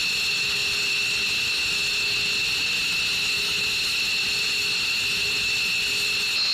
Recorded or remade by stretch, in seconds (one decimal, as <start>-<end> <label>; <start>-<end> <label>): 0.0-6.5 recorded